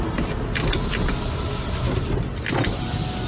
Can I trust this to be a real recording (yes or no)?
yes